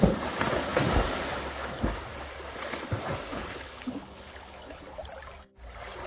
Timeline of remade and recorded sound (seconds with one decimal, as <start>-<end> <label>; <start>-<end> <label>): 0.0-3.3 recorded; 3.3-5.0 remade; 5.0-6.1 recorded